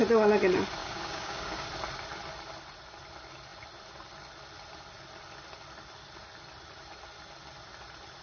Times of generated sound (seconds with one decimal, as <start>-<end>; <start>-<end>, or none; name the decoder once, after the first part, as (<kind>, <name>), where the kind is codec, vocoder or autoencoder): 0.8-1.7 (codec, DAC)